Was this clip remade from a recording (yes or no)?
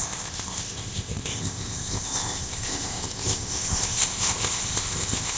yes